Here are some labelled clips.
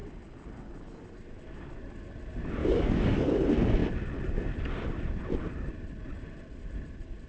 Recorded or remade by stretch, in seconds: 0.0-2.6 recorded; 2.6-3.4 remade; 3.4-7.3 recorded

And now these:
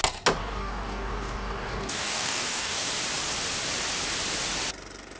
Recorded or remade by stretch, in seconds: 0.0-0.4 recorded; 0.4-2.9 remade; 2.9-5.2 recorded

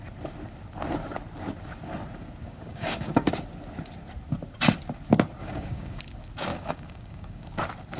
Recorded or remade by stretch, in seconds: 0.0-2.4 recorded; 2.4-3.3 remade; 3.3-5.4 recorded; 5.4-6.0 remade; 6.0-6.5 recorded; 6.5-7.6 remade; 7.6-8.0 recorded